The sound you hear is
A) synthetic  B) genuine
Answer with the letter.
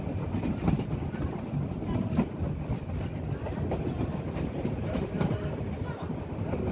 B